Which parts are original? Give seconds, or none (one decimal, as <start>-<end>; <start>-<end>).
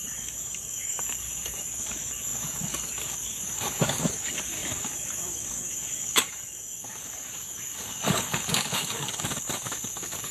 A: none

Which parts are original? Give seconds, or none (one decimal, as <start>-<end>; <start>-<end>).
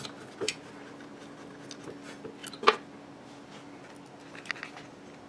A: 0.0-5.3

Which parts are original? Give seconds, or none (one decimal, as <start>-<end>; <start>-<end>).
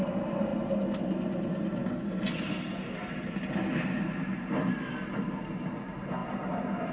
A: 0.0-6.9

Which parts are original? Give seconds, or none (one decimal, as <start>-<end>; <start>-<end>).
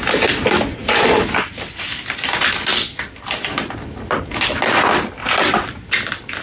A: 0.0-6.4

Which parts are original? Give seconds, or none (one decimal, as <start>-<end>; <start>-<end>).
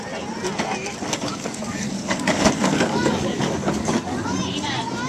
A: 0.0-1.3; 4.4-5.1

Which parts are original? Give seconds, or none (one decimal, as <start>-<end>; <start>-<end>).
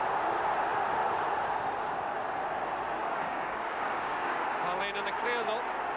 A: 0.0-3.0; 4.5-6.0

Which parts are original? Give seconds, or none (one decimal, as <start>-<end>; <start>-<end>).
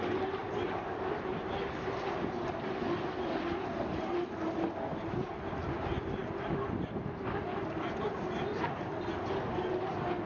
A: 0.0-10.3